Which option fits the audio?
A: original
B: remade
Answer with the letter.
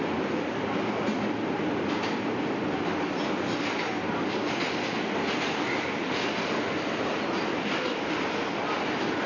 A